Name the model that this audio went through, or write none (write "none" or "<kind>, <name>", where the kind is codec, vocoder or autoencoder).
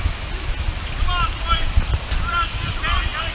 none